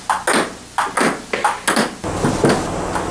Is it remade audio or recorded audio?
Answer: recorded